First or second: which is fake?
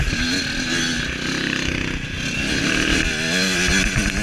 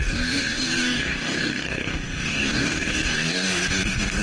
second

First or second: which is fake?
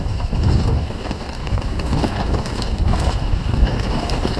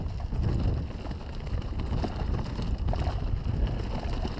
first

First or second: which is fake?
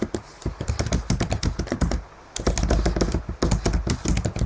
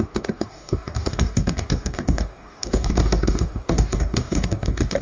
second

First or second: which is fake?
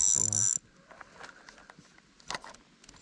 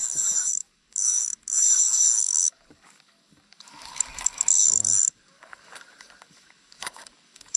second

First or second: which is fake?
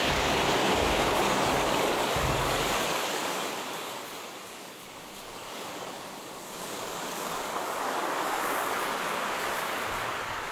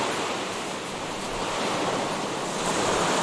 first